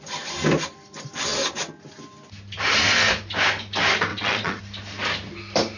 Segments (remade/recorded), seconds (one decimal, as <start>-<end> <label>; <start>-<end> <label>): 0.0-4.1 recorded; 4.1-4.6 remade; 4.6-5.8 recorded